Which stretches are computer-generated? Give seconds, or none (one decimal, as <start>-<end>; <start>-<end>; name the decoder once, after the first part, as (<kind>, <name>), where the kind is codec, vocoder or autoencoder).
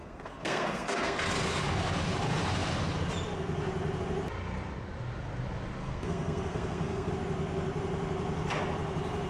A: 0.0-1.2 (codec, SNAC); 5.8-7.1